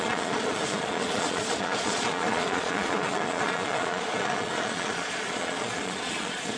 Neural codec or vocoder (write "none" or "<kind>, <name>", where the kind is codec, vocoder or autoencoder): vocoder, Vocos